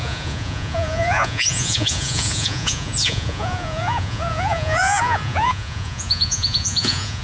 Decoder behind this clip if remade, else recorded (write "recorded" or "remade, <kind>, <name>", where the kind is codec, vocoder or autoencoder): remade, vocoder, Vocos